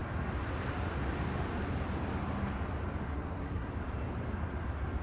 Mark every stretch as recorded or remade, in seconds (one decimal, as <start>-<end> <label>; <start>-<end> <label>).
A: 0.0-3.1 recorded; 3.1-3.7 remade; 3.7-5.0 recorded